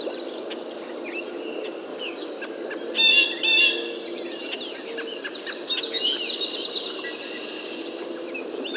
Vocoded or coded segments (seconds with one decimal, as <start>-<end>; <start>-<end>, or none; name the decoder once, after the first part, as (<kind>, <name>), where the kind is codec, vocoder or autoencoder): 1.9-2.4 (codec, DAC)